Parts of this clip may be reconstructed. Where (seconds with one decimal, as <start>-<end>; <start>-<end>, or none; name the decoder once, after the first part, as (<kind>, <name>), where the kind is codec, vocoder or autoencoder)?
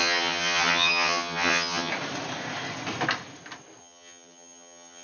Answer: 0.0-1.9 (vocoder, HiFi-GAN); 3.8-5.0